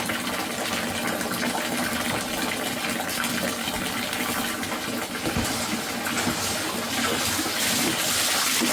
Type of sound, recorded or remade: recorded